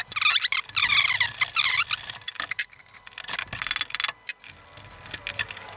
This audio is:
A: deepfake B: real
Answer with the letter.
B